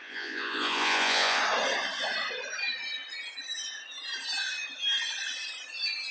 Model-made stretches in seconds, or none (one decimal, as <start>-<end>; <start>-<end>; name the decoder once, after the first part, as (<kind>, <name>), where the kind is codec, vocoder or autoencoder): 0.0-1.4 (vocoder, Vocos)